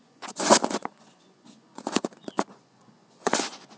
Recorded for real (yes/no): no